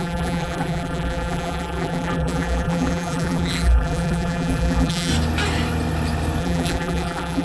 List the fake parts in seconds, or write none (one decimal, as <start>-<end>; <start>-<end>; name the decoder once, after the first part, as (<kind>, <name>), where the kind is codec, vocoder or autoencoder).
0.0-5.1 (vocoder, BigVGAN v2); 6.4-7.4